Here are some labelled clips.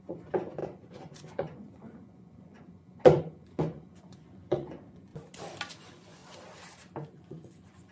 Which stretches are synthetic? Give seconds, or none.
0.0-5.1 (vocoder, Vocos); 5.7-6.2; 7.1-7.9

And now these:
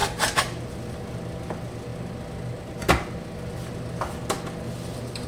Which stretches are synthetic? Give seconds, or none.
none

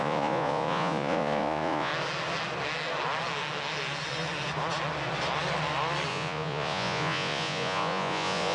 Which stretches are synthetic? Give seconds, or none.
0.0-1.9 (vocoder, Vocos); 6.1-8.5

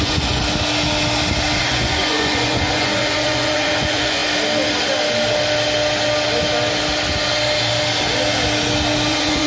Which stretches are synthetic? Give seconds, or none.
0.0-0.4 (vocoder, Vocos); 1.6-4.2; 9.1-9.5

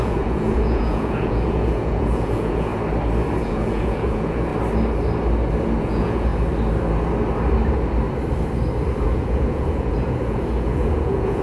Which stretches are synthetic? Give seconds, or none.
0.0-2.7 (vocoder, Vocos); 3.4-4.5; 5.8-6.3; 9.0-11.4

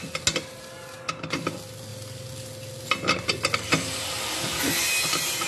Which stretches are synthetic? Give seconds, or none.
none

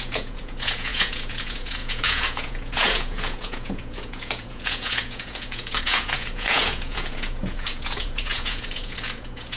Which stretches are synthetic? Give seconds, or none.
0.0-9.6 (vocoder, Vocos)